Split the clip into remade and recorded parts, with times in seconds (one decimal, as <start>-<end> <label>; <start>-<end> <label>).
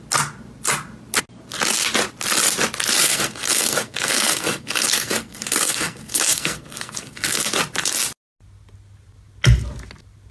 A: 0.0-3.0 recorded; 3.0-7.5 remade; 7.5-10.3 recorded